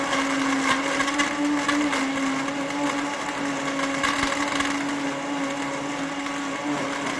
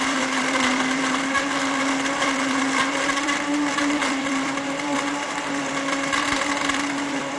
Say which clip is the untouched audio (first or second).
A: first